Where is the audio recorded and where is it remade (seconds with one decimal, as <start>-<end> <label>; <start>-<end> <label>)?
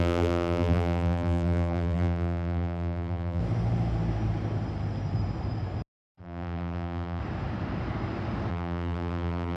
0.0-3.4 remade; 3.4-6.2 recorded; 6.2-7.2 remade; 7.2-8.5 recorded; 8.5-9.6 remade